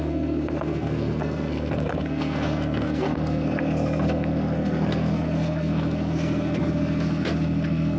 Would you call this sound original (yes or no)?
no